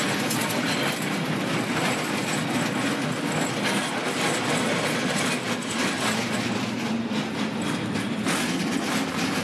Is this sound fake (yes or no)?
no